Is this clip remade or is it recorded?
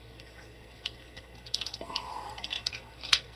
remade